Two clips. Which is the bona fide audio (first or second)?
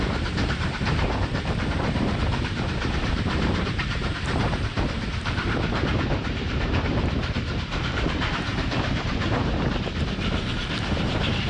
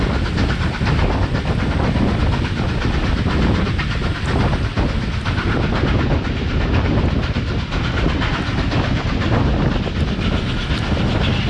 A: second